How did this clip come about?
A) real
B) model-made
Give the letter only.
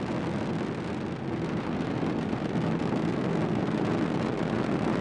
A